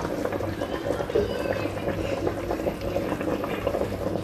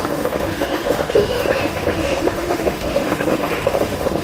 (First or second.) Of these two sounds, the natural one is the first